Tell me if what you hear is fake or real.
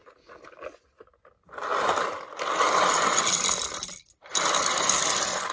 real